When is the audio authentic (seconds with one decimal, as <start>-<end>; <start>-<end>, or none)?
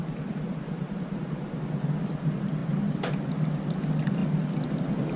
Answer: 0.0-5.2